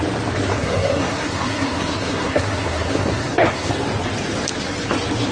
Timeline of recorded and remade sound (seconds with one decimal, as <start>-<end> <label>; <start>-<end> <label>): 0.0-0.5 recorded; 0.5-3.7 remade; 3.7-5.3 recorded